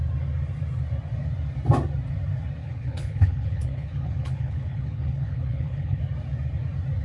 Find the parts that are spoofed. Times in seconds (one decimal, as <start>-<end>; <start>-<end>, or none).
2.6-6.0